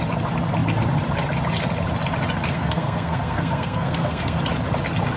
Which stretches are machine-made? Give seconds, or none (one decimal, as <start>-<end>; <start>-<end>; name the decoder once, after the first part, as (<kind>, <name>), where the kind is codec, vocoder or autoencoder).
2.5-4.4 (codec, SNAC)

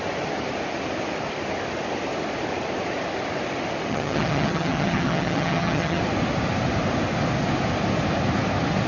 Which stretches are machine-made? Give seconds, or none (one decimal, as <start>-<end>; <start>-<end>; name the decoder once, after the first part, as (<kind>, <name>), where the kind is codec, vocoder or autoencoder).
3.9-6.0 (vocoder, HiFi-GAN)

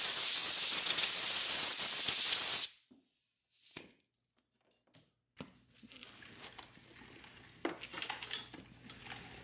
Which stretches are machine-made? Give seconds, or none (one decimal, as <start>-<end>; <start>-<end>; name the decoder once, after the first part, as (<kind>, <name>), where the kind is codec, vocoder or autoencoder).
none

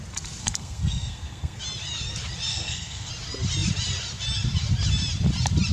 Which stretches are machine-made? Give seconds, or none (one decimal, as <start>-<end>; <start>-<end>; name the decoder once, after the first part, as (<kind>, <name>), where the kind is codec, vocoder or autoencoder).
0.4-1.6 (codec, SNAC); 2.5-3.1

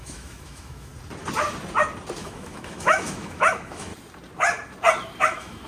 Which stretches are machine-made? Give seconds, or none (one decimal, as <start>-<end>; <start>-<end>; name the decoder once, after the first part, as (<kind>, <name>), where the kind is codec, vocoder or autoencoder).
0.0-0.9 (autoencoder, DAC-VAE); 2.2-3.9; 5.2-5.7

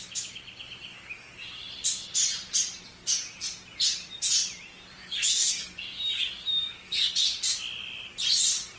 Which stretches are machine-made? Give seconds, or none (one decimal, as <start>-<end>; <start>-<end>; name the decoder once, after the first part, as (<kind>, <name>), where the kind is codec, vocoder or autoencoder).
0.9-1.7 (codec, DAC); 5.0-7.1

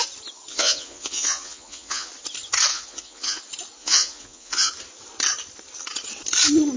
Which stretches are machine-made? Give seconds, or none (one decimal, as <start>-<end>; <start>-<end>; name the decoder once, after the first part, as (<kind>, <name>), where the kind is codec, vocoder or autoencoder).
0.5-2.1 (vocoder, Vocos); 2.7-3.4; 3.8-4.7

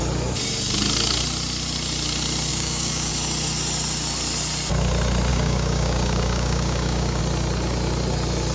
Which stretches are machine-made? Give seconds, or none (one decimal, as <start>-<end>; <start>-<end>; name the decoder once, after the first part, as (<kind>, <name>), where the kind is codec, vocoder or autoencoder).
2.5-3.1 (codec, DAC); 5.3-7.2